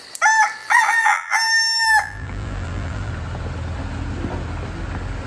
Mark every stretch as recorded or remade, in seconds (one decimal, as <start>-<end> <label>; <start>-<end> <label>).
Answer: 0.0-0.6 recorded; 0.6-3.1 remade; 3.1-5.3 recorded